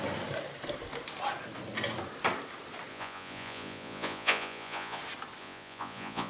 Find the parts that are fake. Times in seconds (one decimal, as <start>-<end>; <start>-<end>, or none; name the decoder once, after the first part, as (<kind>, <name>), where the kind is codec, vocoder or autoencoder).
2.9-5.0 (vocoder, Vocos); 5.4-6.3

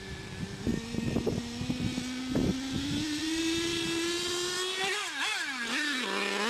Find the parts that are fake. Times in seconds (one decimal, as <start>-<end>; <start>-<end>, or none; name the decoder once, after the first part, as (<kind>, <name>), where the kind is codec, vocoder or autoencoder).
none

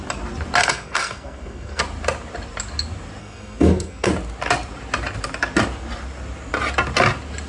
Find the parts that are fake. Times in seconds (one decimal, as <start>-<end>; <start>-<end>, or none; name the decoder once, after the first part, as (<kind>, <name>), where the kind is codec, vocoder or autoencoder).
0.6-1.8 (codec, SNAC); 3.2-4.1

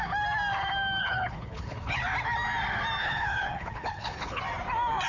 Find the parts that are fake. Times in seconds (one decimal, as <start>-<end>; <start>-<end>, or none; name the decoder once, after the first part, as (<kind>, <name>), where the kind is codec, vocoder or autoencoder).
1.0-2.0 (codec, HILCodec); 3.0-4.4

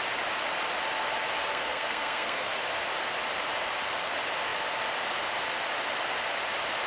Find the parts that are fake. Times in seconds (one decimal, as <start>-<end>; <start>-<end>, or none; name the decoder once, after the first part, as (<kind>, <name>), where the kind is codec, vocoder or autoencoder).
1.5-2.5 (codec, SNAC)

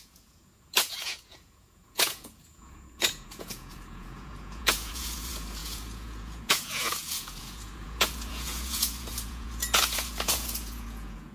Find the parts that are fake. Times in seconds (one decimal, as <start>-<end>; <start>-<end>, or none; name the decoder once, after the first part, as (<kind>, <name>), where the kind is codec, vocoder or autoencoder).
0.0-11.3 (vocoder, Vocos)

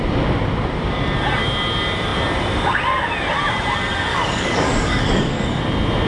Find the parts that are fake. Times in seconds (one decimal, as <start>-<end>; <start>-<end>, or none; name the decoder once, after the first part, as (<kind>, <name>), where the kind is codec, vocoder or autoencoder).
4.1-5.6 (codec, DAC)

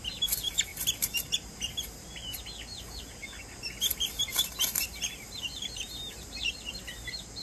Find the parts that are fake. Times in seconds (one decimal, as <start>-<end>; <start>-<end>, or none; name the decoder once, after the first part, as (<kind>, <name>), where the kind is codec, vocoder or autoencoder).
0.7-2.4 (vocoder, BigVGAN v2); 3.9-6.8